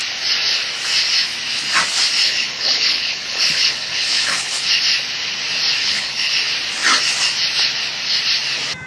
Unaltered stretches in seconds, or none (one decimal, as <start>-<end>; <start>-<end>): 0.0-2.2; 4.7-5.8; 6.3-8.9